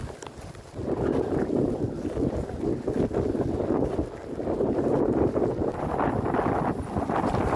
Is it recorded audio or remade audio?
recorded